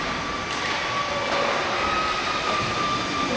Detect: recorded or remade recorded